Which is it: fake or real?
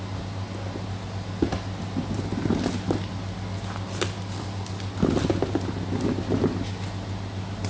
real